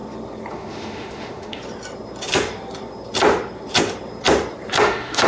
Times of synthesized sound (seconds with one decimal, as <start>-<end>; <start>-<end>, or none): 0.5-1.6; 4.8-5.3